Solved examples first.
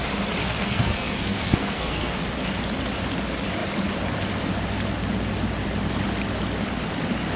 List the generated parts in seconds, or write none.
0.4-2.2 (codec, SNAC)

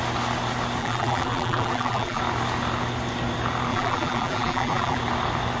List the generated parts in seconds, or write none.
0.8-2.2 (vocoder, BigVGAN v2); 3.7-5.0

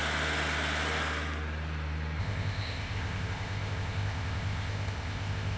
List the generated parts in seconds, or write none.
2.2-5.6 (codec, ZipCodec)

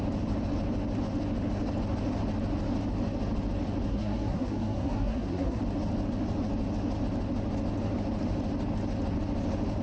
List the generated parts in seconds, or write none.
3.9-5.6 (codec, SNAC)